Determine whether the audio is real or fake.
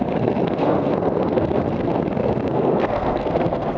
fake